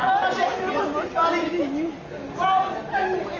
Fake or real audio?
real